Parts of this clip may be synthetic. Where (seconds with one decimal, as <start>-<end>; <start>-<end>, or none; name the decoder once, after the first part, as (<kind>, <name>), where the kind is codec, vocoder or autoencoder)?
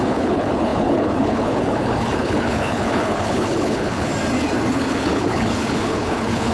0.0-4.1 (codec, HILCodec); 4.7-6.5